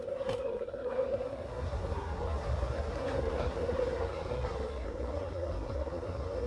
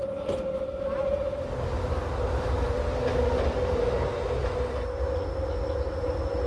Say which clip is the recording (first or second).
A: second